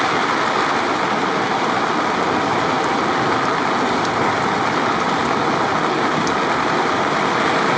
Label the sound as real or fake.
real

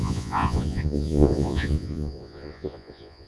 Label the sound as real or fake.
fake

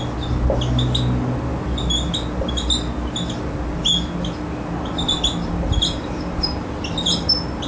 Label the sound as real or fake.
real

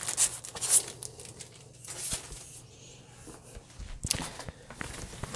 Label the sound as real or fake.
real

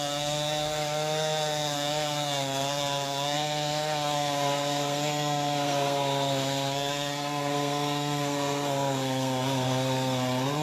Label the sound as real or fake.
fake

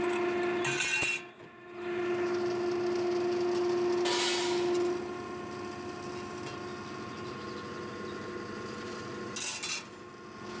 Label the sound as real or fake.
real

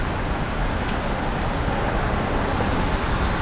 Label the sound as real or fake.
real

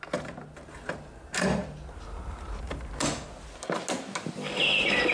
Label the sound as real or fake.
real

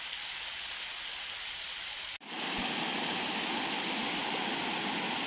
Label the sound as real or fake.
real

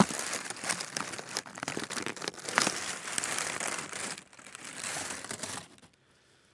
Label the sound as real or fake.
fake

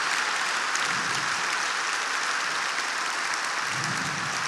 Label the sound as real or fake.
real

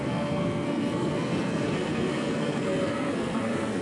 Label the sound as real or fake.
fake